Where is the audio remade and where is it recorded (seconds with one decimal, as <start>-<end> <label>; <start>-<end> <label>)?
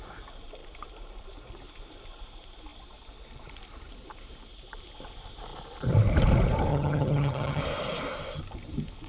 0.0-6.7 recorded; 6.7-7.6 remade; 7.6-9.1 recorded